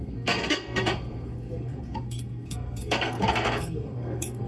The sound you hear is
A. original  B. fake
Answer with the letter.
B